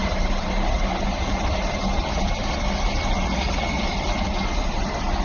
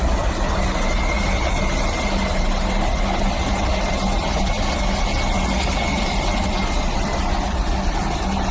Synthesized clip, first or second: first